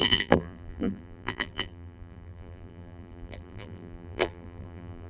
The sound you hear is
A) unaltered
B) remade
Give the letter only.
B